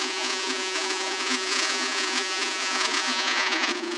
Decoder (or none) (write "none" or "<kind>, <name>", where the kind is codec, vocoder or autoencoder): vocoder, Vocos